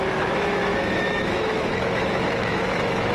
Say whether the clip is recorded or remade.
remade